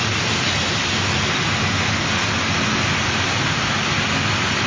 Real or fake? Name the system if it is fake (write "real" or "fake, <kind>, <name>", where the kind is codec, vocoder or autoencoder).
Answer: real